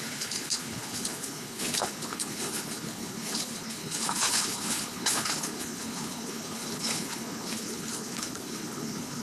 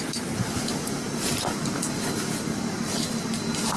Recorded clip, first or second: second